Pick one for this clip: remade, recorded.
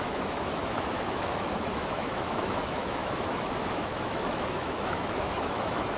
remade